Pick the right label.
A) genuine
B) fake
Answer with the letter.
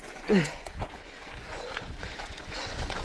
B